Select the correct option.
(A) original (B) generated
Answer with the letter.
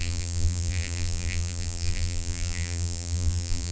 B